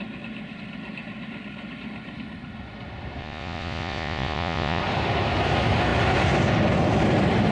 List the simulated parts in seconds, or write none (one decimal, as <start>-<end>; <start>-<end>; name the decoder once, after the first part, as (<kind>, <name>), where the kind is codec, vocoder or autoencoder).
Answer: 3.2-4.8 (vocoder, Vocos)